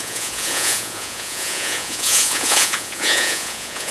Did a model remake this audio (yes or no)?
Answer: yes